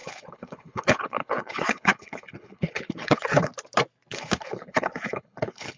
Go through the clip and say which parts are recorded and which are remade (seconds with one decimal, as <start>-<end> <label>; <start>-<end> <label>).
0.0-3.5 remade; 3.5-4.1 recorded; 4.1-5.8 remade